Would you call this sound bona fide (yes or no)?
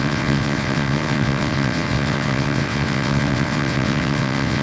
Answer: no